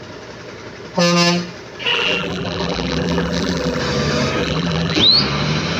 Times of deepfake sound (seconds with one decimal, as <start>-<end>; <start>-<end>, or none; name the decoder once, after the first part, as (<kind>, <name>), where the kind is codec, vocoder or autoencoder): 1.9-3.8 (vocoder, BigVGAN v2); 4.4-5.0

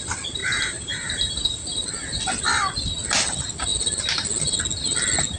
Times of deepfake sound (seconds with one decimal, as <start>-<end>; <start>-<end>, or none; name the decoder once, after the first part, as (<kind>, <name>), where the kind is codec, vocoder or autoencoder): 0.4-1.6 (vocoder, BigVGAN v2)